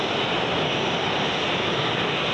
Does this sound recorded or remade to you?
recorded